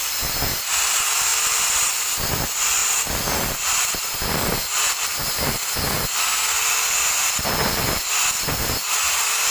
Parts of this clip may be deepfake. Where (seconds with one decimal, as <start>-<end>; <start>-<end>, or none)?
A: none